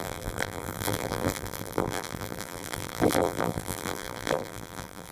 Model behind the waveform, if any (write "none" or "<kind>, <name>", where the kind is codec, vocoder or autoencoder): vocoder, BigVGAN v2